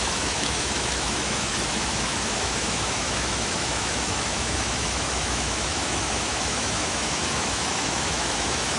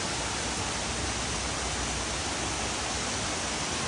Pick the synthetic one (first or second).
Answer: first